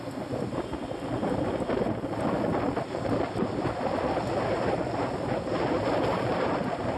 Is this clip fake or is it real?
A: real